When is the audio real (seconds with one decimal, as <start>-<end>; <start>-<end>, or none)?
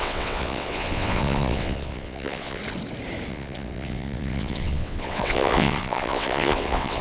2.6-3.3